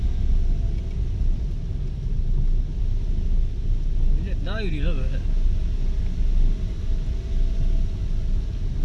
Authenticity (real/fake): real